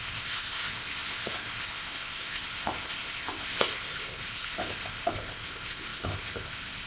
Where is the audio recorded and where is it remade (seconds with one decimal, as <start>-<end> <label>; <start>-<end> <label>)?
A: 0.0-6.9 remade